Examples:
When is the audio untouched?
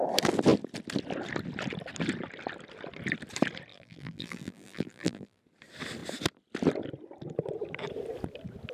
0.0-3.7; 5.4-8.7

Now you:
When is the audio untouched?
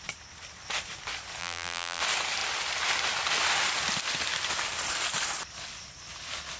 0.0-1.4; 2.0-6.6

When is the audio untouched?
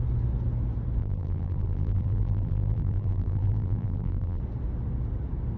0.0-1.0; 4.4-5.6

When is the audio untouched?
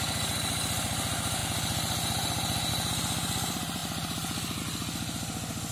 0.0-5.7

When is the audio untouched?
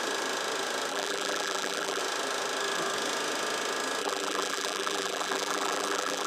0.0-0.9; 2.0-4.0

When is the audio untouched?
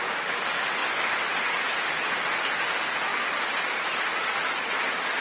0.0-0.8; 1.8-3.1; 4.5-5.2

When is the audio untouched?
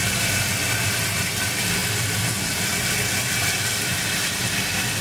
0.0-5.0